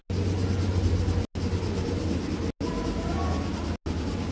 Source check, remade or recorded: recorded